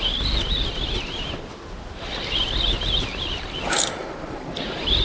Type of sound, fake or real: real